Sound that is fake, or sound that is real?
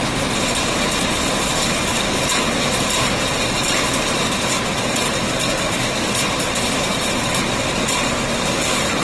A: real